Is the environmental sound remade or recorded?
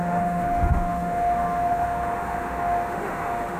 remade